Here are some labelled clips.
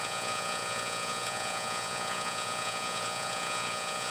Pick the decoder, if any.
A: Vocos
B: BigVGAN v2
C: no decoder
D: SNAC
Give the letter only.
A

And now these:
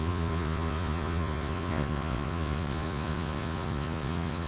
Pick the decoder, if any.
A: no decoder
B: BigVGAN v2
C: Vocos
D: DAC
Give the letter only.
C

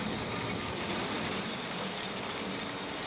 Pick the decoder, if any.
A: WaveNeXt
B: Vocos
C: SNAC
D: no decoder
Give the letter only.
D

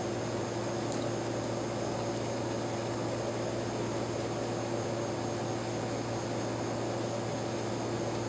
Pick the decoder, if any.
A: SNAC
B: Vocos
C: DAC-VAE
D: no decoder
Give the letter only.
D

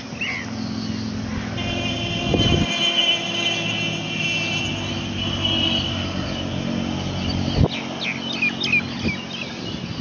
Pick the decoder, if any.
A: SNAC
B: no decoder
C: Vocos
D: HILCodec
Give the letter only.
B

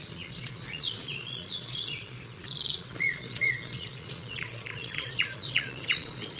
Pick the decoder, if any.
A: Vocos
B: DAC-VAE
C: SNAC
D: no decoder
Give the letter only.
A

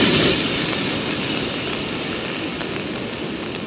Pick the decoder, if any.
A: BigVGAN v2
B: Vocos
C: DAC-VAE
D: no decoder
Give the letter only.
D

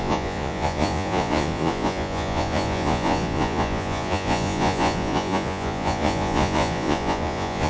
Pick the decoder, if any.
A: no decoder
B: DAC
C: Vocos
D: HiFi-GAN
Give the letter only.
C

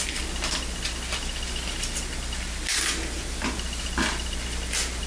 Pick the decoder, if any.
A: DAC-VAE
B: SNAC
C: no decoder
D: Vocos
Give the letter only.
C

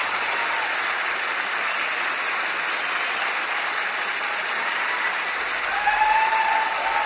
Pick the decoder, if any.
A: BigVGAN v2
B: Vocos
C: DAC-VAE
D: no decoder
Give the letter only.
D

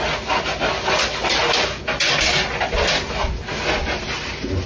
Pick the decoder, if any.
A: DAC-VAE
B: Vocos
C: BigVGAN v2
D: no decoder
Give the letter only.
D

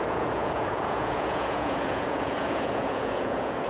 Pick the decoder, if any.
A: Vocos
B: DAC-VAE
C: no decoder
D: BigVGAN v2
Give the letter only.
A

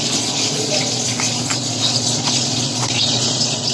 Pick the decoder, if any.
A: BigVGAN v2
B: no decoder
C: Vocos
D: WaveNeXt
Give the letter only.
C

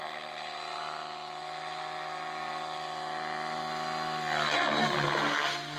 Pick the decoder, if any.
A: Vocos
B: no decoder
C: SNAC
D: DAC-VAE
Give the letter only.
B